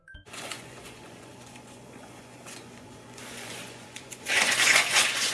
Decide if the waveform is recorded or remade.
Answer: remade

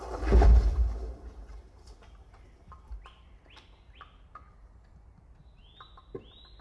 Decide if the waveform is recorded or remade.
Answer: recorded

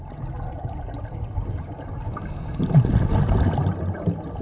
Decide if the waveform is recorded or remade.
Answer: recorded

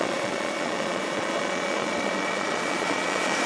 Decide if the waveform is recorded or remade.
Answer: remade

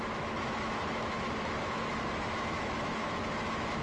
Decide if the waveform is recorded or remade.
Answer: remade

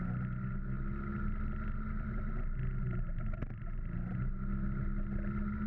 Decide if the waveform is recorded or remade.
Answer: recorded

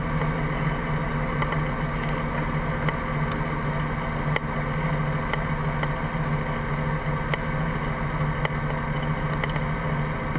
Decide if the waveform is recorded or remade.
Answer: recorded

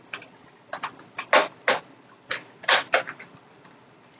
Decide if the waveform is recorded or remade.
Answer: recorded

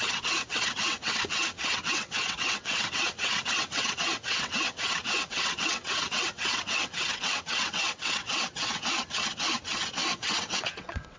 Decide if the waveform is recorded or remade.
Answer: remade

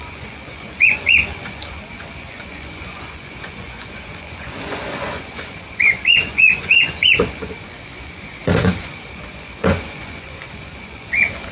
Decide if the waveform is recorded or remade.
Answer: remade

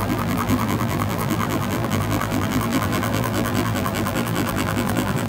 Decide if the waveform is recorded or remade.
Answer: remade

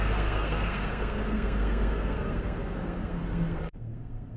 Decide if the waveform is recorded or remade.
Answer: remade